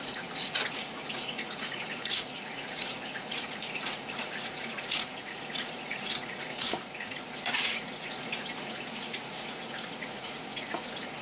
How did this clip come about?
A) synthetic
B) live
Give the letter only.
A